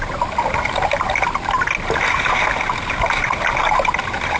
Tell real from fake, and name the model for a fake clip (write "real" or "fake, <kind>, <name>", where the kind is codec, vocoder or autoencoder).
real